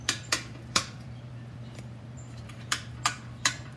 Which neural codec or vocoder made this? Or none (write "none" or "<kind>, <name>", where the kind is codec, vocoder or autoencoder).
vocoder, BigVGAN v2